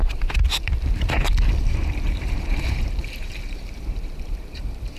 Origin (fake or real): fake